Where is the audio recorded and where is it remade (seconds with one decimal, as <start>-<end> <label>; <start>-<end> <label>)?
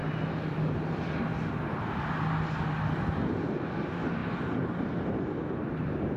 0.0-6.2 recorded